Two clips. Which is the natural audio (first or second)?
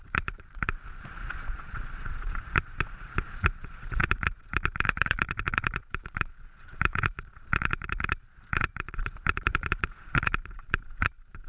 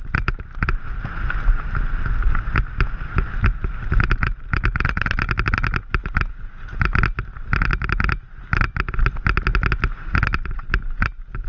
second